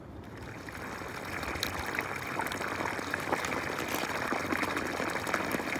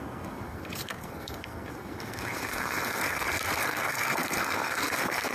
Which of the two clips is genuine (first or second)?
first